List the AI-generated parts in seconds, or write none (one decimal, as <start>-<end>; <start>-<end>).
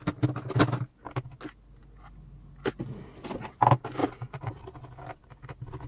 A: 4.0-4.5